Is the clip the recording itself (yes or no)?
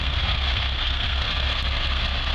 no